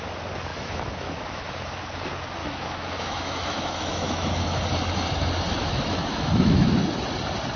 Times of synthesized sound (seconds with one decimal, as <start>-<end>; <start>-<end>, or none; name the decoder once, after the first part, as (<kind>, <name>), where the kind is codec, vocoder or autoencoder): 0.5-1.8 (autoencoder, DAC-VAE); 2.4-4.6; 5.6-6.8

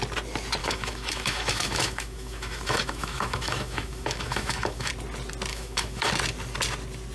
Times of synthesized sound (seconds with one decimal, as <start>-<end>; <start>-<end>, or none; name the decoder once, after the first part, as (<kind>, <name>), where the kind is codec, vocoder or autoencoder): 0.6-4.9 (autoencoder, DAC-VAE); 5.5-6.1

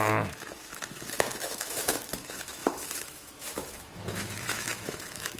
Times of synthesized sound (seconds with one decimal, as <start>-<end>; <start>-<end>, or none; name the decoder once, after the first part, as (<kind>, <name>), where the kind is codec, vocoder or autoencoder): 0.0-5.4 (autoencoder, DAC-VAE)